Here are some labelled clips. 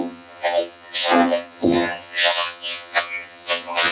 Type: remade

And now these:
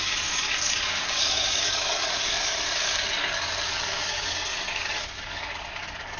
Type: remade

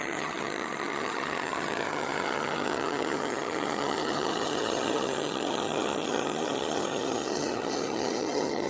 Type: remade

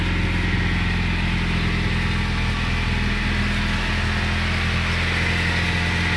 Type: recorded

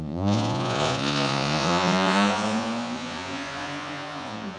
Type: remade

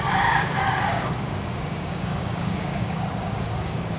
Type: remade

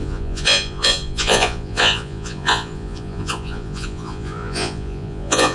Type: remade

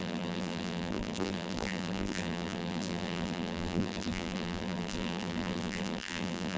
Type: remade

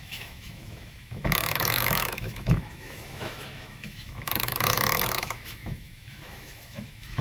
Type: remade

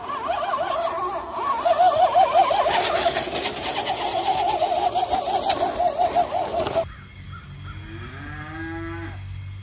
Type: recorded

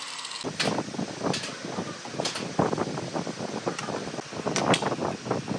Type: recorded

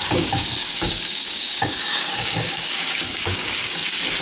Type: remade